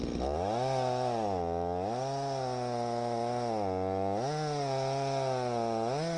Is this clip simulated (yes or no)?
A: no